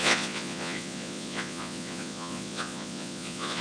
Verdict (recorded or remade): remade